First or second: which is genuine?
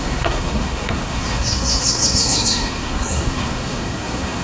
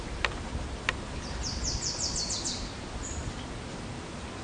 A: second